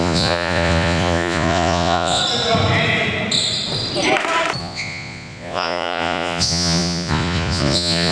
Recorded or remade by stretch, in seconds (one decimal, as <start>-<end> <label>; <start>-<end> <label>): 0.0-2.2 remade; 2.2-4.6 recorded; 4.6-8.1 remade